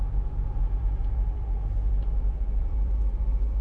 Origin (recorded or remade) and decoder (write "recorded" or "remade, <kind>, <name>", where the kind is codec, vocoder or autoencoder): remade, vocoder, BigVGAN v2